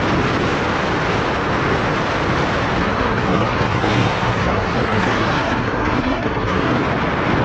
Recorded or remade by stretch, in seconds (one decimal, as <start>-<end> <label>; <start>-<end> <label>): 0.0-2.8 recorded; 2.8-6.8 remade; 6.8-7.4 recorded